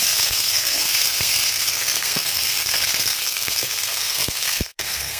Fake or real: fake